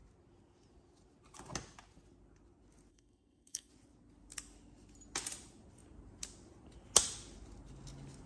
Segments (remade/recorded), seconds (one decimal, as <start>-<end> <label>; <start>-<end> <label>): 0.0-2.9 recorded; 2.9-3.7 remade; 3.7-8.3 recorded